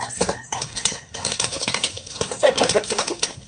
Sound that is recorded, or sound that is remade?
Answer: remade